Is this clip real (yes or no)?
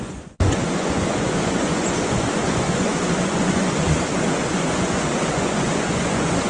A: no